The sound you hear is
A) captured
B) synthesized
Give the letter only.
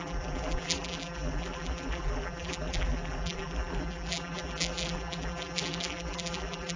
B